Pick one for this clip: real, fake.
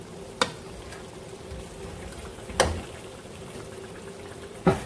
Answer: real